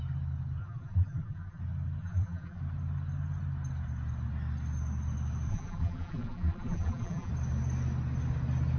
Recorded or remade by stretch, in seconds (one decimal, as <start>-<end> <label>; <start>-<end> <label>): 0.0-0.6 recorded; 0.6-1.6 remade; 1.6-2.0 recorded; 2.0-2.6 remade; 2.6-5.5 recorded; 5.5-7.3 remade; 7.3-8.8 recorded